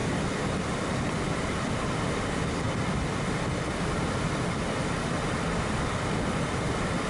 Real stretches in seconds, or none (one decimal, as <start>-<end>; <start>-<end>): 0.0-7.1